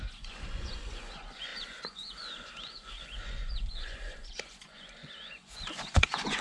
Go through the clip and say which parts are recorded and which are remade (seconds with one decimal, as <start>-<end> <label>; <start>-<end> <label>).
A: 0.0-6.4 remade